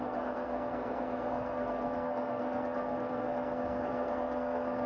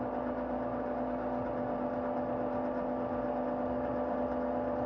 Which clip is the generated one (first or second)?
first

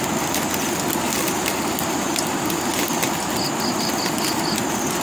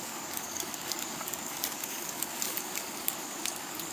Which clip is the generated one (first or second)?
second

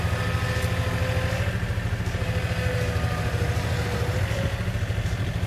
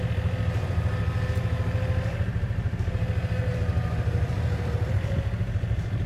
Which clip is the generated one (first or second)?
second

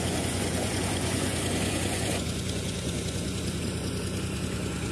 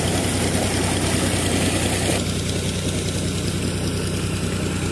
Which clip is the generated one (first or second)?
first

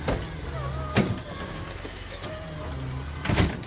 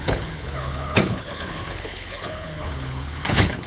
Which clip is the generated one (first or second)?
second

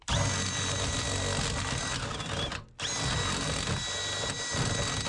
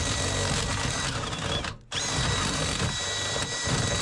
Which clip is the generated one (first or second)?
second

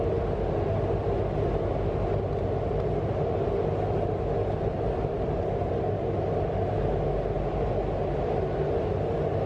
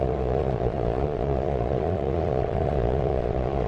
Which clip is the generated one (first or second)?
second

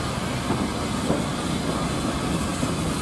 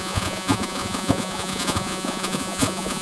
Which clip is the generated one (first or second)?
second